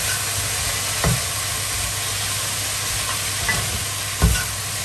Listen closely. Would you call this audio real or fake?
real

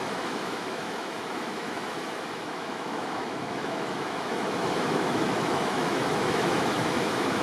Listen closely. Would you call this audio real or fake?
fake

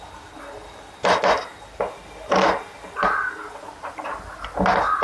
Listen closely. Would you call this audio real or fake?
real